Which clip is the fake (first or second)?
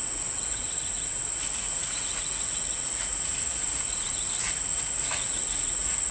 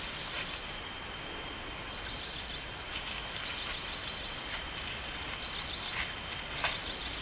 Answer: first